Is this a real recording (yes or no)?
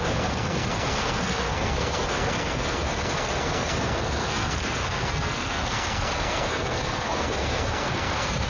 no